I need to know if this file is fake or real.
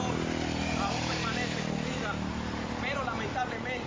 real